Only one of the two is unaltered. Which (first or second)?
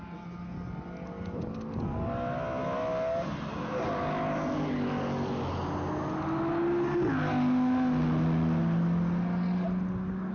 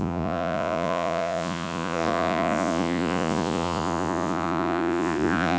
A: first